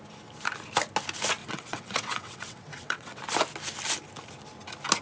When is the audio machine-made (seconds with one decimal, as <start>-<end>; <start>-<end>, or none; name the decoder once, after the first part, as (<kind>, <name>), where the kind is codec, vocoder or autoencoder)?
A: 1.4-3.2 (vocoder, WaveNeXt)